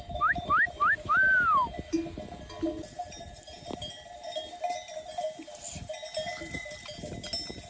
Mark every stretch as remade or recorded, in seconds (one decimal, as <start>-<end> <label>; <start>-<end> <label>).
0.0-7.7 recorded